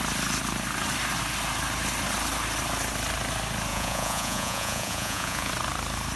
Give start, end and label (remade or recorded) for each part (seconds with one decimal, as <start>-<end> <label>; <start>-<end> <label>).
0.0-3.7 recorded; 3.7-5.5 remade; 5.5-6.2 recorded